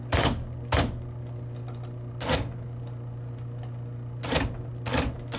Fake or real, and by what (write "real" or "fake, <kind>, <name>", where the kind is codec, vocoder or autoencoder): real